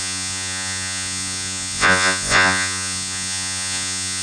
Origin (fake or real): fake